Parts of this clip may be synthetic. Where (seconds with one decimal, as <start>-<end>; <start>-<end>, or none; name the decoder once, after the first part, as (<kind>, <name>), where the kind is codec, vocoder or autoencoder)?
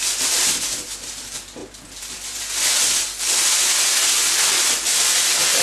none